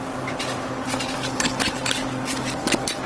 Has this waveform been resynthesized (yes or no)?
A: no